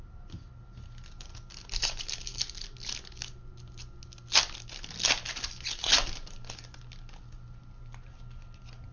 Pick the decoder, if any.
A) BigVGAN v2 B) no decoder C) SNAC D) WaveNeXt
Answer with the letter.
B